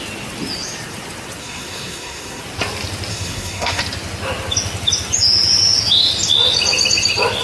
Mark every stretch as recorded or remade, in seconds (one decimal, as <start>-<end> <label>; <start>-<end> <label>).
0.0-1.4 recorded; 1.4-2.4 remade; 2.4-3.1 recorded; 3.1-3.8 remade; 3.8-7.4 recorded